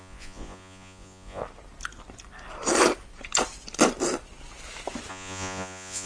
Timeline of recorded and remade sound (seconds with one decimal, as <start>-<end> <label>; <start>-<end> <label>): 0.0-1.4 remade; 1.4-5.1 recorded; 5.1-6.1 remade